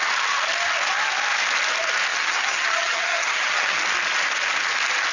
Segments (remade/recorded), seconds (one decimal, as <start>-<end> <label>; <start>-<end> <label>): 0.0-2.1 recorded; 2.1-3.8 remade; 3.8-5.1 recorded